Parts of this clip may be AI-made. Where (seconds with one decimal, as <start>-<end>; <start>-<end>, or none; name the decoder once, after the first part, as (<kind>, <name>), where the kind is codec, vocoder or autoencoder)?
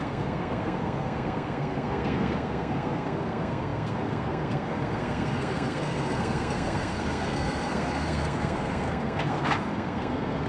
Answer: 0.0-10.5 (codec, SNAC)